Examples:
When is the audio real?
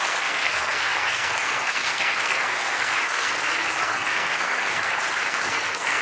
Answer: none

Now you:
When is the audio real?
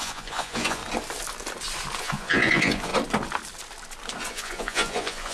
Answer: 0.8-2.0; 2.9-4.3